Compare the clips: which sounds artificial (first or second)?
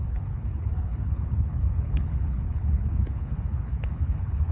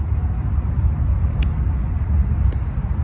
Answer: first